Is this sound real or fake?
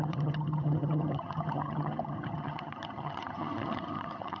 fake